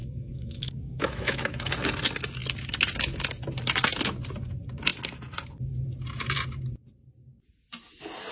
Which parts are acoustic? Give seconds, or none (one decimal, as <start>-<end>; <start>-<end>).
1.7-8.3